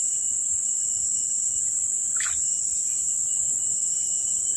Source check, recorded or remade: recorded